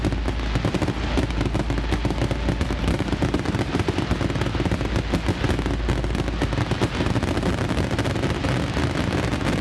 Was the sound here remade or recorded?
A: recorded